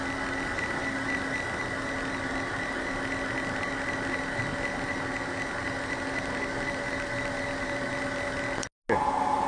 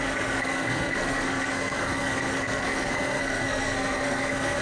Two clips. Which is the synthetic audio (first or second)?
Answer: second